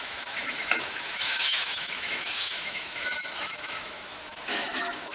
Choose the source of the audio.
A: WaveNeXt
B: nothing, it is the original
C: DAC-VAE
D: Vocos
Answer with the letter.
C